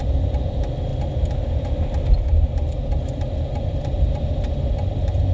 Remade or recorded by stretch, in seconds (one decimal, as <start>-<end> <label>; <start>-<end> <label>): 0.0-5.3 recorded